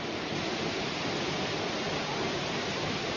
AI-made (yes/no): no